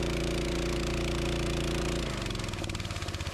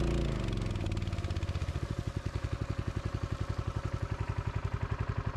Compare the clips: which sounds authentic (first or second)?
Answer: second